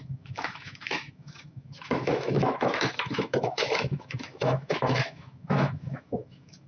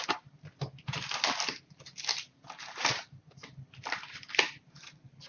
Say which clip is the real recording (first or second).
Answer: second